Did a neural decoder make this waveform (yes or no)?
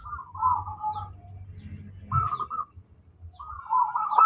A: no